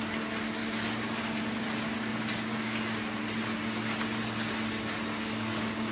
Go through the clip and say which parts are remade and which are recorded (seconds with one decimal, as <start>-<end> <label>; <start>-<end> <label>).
0.0-2.1 recorded; 2.1-2.8 remade; 2.8-5.1 recorded; 5.1-5.9 remade